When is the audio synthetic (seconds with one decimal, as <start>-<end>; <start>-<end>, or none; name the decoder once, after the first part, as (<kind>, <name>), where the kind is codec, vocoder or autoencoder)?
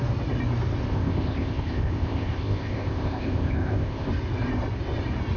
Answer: 0.9-4.1 (codec, ZipCodec)